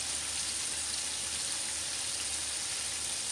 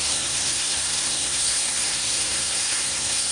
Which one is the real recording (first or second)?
first